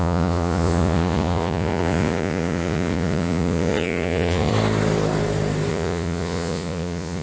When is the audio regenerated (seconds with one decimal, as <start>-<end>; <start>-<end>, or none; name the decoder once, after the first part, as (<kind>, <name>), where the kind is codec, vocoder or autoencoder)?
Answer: 0.0-4.5 (vocoder, Vocos); 5.7-7.2

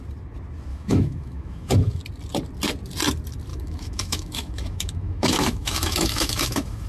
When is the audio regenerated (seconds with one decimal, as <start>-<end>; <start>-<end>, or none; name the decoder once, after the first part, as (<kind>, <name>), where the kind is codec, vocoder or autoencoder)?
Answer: 0.7-2.0 (autoencoder, DAC-VAE); 3.5-6.9

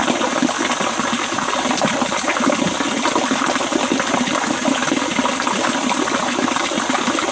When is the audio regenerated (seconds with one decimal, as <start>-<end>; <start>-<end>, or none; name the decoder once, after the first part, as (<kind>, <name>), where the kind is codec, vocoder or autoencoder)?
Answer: none

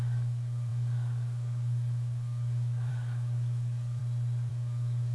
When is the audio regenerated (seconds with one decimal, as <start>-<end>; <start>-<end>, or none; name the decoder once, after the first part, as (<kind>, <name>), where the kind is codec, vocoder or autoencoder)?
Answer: 0.0-4.0 (codec, DAC); 4.5-5.1

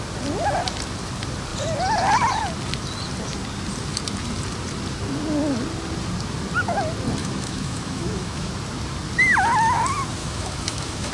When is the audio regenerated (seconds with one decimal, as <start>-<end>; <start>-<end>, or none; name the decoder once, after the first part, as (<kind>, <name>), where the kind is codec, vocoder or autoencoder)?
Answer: 7.2-8.5 (autoencoder, DAC-VAE); 10.2-11.1